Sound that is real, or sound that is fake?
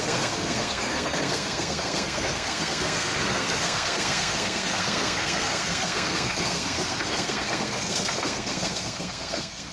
fake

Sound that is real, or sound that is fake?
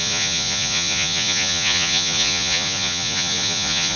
fake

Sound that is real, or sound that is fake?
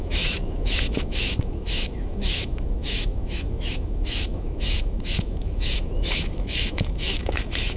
fake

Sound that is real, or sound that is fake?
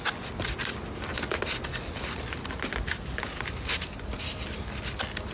real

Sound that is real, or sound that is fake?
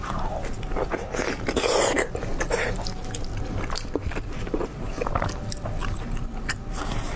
real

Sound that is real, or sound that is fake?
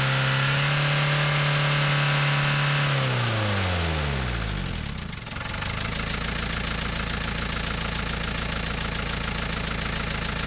real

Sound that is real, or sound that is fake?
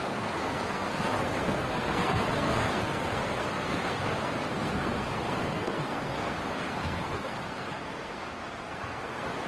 fake